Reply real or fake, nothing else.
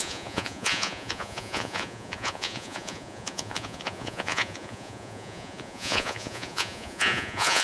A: fake